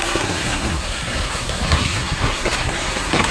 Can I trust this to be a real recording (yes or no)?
no